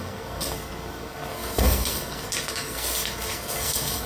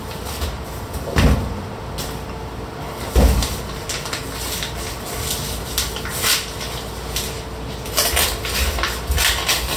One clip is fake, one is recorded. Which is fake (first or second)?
first